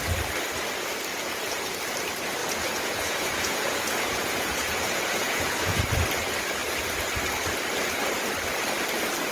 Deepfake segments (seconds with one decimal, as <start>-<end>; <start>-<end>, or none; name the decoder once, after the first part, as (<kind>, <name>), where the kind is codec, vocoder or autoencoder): 1.1-1.7 (vocoder, Vocos); 2.4-5.8